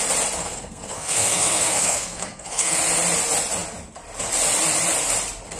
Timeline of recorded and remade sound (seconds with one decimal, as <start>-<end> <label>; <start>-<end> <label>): 0.0-0.4 recorded; 0.4-2.8 remade; 2.8-5.6 recorded